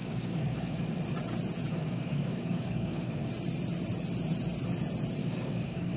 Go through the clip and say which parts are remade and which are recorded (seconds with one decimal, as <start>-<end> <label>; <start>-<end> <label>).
0.0-1.0 remade; 1.0-1.7 recorded; 1.7-3.3 remade; 3.3-5.2 recorded; 5.2-6.0 remade